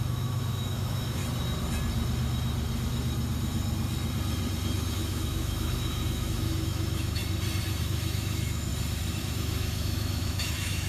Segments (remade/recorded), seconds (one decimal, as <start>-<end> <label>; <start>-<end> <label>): 0.0-1.2 remade; 1.2-4.9 recorded; 4.9-7.2 remade; 7.2-7.8 recorded; 7.8-8.7 remade; 8.7-9.2 recorded; 9.2-10.9 remade